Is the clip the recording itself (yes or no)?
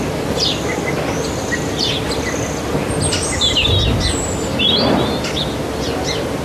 yes